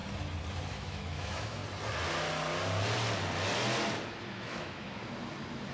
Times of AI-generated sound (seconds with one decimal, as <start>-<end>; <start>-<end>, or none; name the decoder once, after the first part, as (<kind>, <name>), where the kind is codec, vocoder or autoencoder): 0.7-1.6 (autoencoder, DAC-VAE); 4.3-5.0